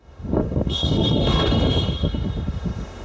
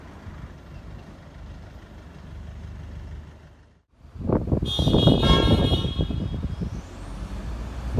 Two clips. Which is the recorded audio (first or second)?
second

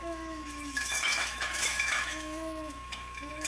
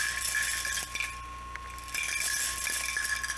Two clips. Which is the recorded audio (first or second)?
second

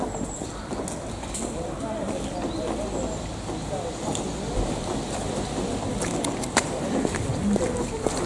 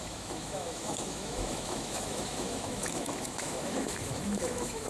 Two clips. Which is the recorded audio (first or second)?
first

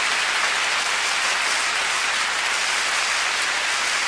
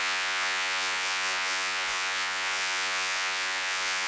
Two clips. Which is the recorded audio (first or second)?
first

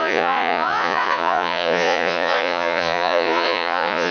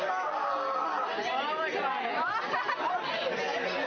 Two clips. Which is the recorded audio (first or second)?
second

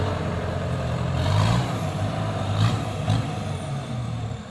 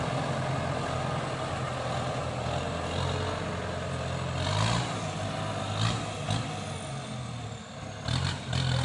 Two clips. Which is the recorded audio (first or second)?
second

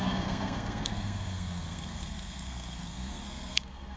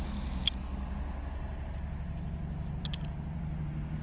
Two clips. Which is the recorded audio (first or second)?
second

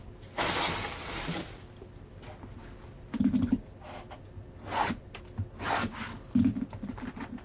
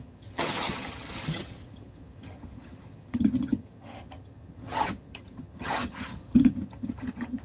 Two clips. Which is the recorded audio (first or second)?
first